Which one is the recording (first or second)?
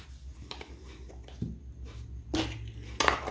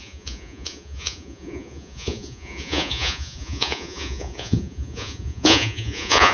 first